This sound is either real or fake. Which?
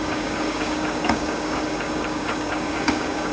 fake